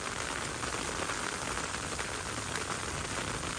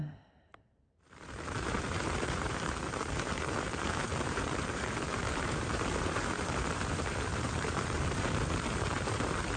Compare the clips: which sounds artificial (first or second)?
second